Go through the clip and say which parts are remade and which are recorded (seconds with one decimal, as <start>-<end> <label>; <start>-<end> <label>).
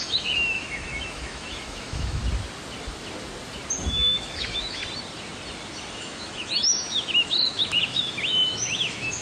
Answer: 0.0-2.2 remade; 2.2-3.9 recorded; 3.9-4.8 remade; 4.8-5.9 recorded; 5.9-9.2 remade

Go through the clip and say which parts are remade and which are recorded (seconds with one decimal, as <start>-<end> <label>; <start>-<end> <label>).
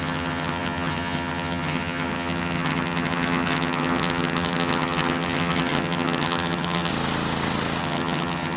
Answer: 0.0-6.9 remade; 6.9-7.8 recorded; 7.8-8.6 remade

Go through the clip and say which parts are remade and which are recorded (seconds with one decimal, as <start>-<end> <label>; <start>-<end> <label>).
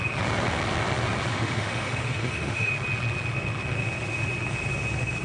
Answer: 0.0-1.3 recorded; 1.3-2.7 remade; 2.7-5.2 recorded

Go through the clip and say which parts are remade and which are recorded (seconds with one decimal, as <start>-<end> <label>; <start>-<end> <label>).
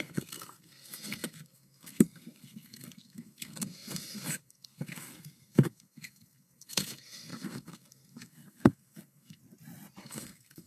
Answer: 0.0-9.4 remade; 9.4-10.0 recorded; 10.0-10.7 remade